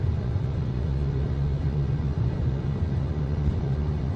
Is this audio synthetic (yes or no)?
yes